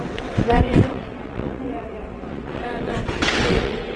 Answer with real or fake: fake